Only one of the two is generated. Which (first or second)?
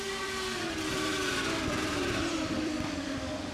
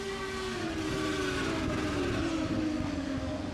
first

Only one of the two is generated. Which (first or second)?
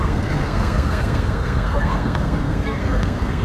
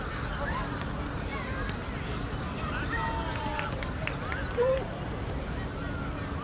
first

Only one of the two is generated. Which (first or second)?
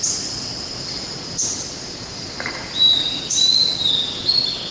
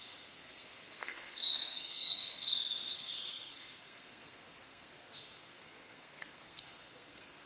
second